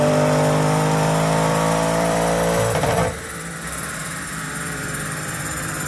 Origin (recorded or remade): remade